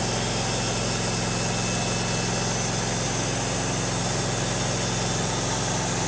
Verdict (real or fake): real